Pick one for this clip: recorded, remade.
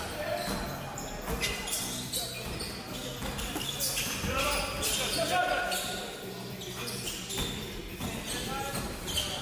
recorded